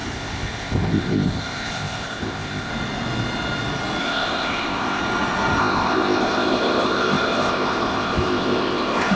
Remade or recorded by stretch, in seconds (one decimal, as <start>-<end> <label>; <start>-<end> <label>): 0.0-2.7 remade; 2.7-4.0 recorded; 4.0-5.0 remade; 5.0-5.6 recorded; 5.6-9.2 remade